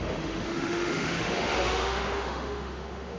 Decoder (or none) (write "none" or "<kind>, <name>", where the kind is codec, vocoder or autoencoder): autoencoder, DAC-VAE